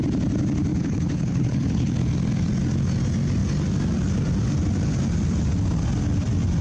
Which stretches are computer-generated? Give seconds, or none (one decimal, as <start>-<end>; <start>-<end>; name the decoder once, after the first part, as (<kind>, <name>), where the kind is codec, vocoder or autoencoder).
0.7-2.0 (codec, HILCodec)